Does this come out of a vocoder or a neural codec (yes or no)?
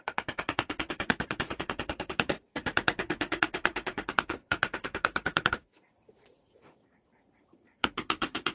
yes